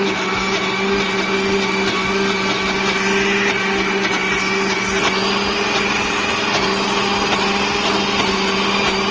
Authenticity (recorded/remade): recorded